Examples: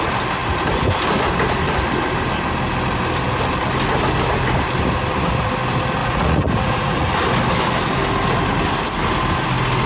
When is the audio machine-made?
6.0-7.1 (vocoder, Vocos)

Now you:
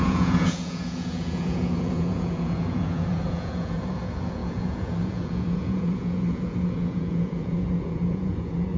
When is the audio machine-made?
0.0-8.8 (vocoder, Vocos)

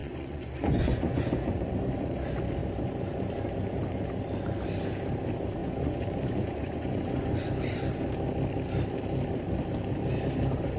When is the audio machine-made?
0.0-1.7 (vocoder, Vocos); 5.6-7.5

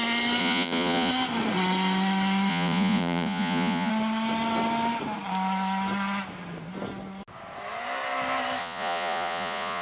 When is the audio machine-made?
0.4-1.1 (vocoder, Vocos); 2.5-3.9; 8.6-9.8

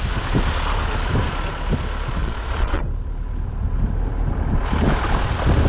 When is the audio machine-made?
2.2-2.8 (vocoder, Vocos)

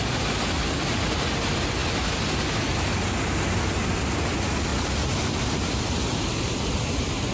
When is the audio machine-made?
none

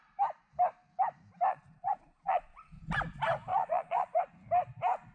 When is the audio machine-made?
1.5-2.8 (vocoder, Vocos); 3.5-4.2

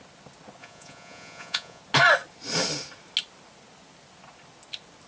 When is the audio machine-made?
0.6-1.8 (vocoder, Vocos)